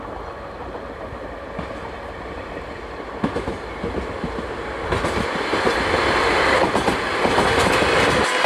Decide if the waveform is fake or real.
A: real